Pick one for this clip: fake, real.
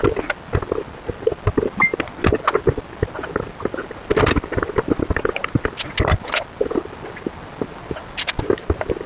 real